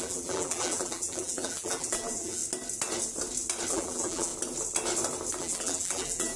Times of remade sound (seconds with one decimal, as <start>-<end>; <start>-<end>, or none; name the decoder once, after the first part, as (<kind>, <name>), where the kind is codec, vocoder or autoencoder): 0.0-2.4 (vocoder, BigVGAN v2); 3.7-4.3; 5.4-6.4